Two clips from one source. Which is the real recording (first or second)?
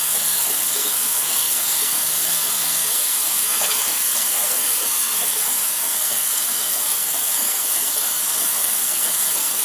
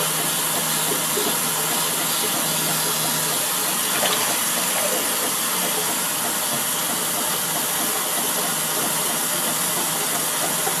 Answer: second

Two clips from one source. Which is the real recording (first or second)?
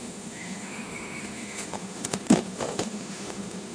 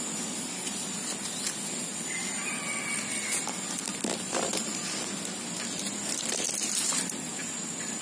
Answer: second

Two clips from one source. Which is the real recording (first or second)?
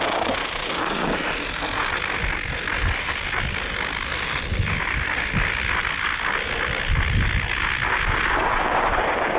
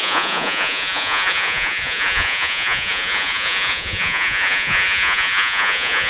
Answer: first